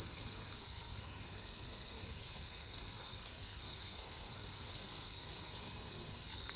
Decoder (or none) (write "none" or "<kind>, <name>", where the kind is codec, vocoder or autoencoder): codec, SNAC